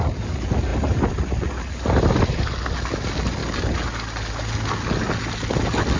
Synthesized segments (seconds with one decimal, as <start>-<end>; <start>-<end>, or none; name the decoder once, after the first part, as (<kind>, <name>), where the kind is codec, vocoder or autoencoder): none